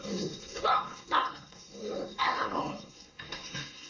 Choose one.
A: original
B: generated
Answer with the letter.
B